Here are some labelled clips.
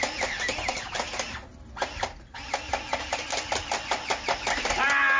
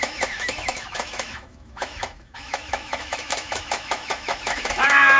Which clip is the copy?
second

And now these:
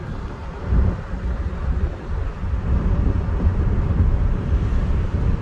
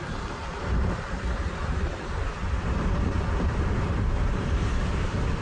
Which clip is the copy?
second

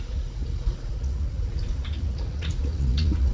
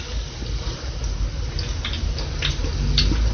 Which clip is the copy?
first